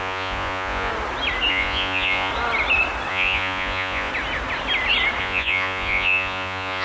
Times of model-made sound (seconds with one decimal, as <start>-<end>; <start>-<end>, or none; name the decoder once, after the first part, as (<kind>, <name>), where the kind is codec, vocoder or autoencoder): 0.0-0.9 (vocoder, Vocos); 1.5-2.3; 3.1-4.1; 5.2-6.8